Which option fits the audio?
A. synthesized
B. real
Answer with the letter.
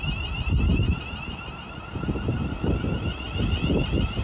B